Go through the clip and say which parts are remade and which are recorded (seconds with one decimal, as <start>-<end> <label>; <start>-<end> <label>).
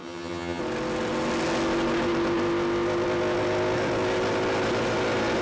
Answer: 0.0-0.6 remade; 0.6-5.4 recorded